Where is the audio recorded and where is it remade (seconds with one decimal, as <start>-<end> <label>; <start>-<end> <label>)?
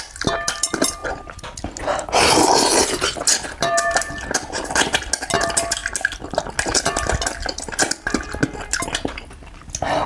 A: 0.0-10.1 recorded